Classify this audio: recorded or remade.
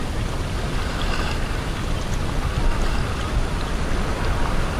recorded